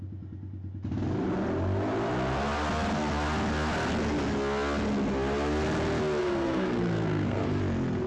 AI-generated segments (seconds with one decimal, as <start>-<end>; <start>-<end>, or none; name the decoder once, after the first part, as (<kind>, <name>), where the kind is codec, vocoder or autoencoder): 6.2-7.6 (codec, SNAC)